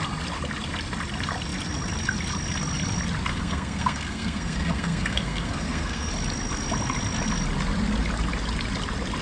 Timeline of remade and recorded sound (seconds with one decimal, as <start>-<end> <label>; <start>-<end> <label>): 0.0-3.3 recorded; 3.3-6.1 remade; 6.1-9.2 recorded